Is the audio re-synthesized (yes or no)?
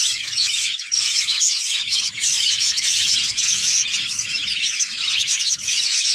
yes